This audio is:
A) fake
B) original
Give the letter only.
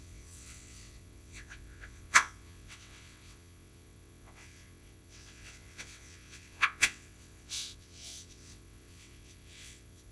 A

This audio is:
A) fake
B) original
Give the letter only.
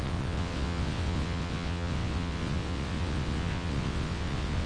A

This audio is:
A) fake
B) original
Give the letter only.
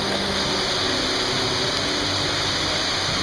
B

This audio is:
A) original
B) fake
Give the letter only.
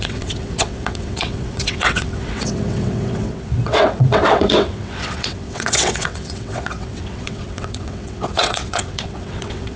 B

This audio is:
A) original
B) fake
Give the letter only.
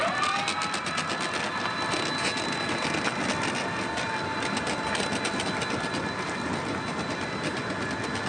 A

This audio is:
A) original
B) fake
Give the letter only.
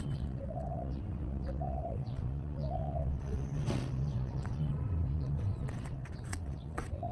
B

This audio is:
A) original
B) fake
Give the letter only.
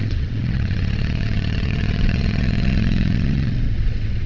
B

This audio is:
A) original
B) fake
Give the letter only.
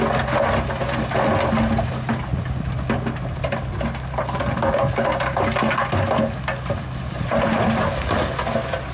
A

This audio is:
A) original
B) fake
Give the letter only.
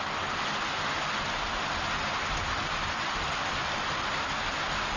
A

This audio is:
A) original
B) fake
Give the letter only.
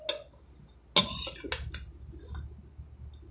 A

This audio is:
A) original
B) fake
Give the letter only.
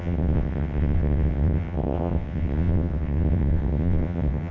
B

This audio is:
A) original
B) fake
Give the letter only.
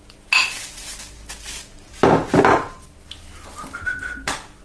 A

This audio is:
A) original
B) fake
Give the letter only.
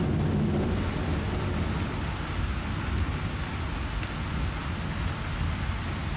A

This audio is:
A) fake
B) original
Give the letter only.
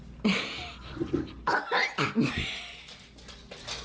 B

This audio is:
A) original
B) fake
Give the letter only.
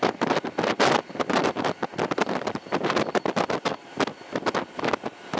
A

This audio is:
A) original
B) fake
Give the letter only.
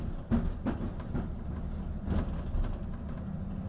A